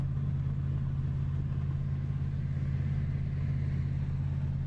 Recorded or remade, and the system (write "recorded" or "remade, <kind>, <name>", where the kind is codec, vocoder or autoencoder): recorded